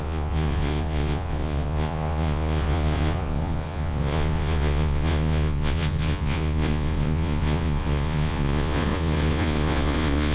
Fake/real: fake